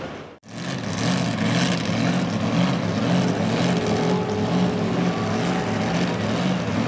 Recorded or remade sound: recorded